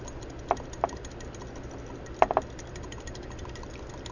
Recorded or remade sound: recorded